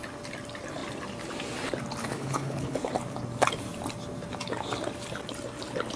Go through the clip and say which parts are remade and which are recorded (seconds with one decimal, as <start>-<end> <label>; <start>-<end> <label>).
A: 0.0-2.0 recorded; 2.0-2.9 remade; 2.9-6.0 recorded

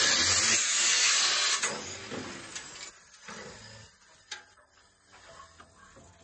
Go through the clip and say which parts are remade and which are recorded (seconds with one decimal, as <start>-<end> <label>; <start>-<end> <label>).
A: 0.0-6.2 recorded

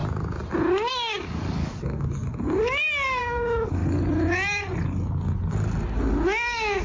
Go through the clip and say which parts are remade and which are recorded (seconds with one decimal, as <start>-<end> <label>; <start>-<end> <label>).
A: 0.0-0.9 recorded; 0.9-2.2 remade; 2.2-3.2 recorded; 3.2-3.8 remade; 3.8-6.8 recorded

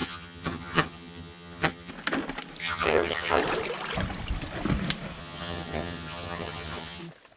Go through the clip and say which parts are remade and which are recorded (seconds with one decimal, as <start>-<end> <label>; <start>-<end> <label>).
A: 0.0-1.9 remade; 1.9-2.6 recorded; 2.6-3.4 remade; 3.4-5.2 recorded; 5.2-7.0 remade; 7.0-7.4 recorded

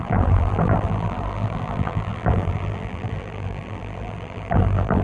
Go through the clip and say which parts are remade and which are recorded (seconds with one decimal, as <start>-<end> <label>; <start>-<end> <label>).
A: 0.0-5.0 remade

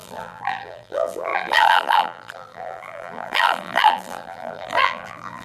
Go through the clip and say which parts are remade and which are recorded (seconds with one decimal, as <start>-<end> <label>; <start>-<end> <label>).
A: 0.0-5.4 remade

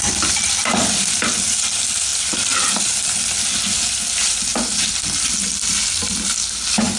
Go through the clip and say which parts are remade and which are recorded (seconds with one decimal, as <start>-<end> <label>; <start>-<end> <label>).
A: 0.0-7.0 recorded

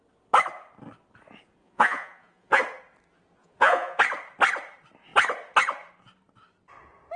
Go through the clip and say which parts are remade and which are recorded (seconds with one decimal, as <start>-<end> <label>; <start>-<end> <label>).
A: 0.0-1.6 recorded; 1.6-2.6 remade; 2.6-3.4 recorded; 3.4-4.0 remade; 4.0-7.2 recorded